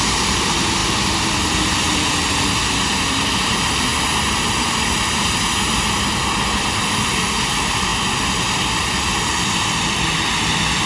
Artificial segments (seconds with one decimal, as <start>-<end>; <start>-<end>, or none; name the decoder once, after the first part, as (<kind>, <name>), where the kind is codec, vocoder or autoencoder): none